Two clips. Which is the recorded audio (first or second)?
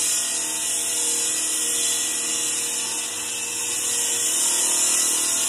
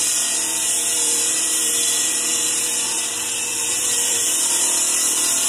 first